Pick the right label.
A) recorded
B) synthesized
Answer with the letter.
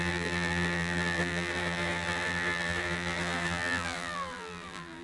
B